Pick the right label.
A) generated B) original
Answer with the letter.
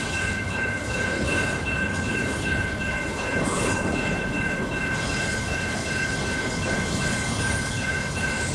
A